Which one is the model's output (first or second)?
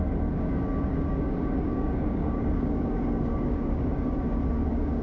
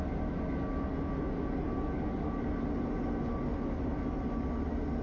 first